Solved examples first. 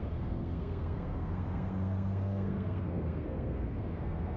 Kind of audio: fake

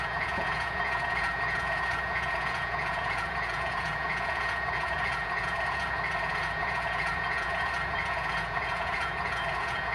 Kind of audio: fake